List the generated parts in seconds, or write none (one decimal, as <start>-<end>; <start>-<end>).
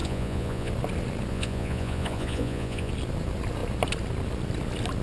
0.0-0.7; 1.3-2.9